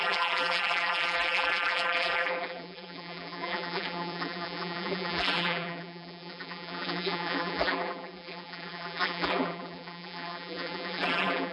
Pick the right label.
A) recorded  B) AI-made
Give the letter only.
B